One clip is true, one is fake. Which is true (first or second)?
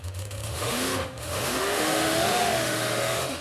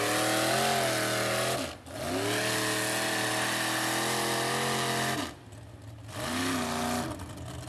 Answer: second